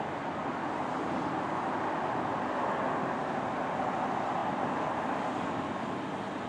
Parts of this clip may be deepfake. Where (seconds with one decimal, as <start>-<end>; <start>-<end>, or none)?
none